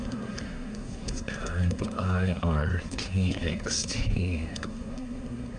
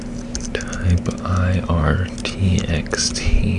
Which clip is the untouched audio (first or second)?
second